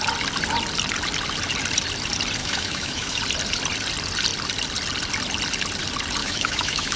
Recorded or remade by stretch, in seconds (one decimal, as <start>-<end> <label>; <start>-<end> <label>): 0.0-2.4 recorded; 2.4-3.2 remade; 3.2-6.2 recorded; 6.2-7.0 remade